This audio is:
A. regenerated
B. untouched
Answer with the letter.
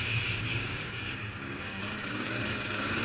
A